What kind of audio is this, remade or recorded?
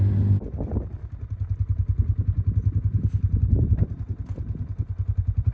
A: recorded